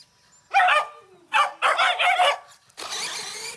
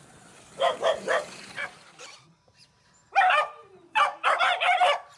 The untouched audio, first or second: first